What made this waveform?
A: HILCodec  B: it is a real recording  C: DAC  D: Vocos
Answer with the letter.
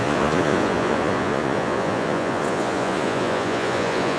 D